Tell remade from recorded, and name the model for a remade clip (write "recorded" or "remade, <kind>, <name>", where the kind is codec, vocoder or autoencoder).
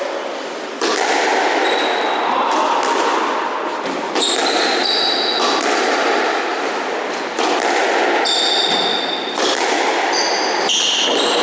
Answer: recorded